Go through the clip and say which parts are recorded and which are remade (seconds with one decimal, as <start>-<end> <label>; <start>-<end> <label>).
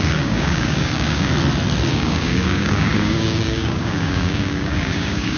0.0-1.3 remade; 1.3-1.9 recorded; 1.9-5.4 remade